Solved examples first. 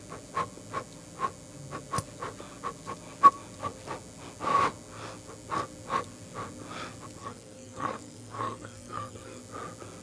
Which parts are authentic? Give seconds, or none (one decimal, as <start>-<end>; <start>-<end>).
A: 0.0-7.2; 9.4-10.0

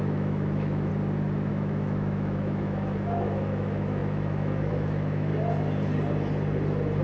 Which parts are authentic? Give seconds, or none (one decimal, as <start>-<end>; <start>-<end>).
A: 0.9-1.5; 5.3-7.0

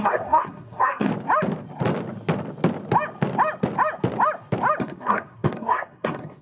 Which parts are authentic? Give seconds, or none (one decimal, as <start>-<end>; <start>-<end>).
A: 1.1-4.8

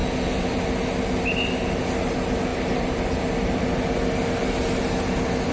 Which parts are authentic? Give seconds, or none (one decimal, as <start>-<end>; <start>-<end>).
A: 0.0-5.5

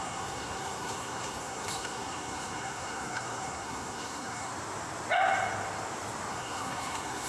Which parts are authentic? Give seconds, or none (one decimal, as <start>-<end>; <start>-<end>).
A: 4.5-6.3